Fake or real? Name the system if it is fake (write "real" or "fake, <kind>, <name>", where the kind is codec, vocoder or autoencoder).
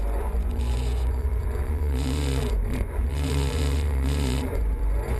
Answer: fake, vocoder, Vocos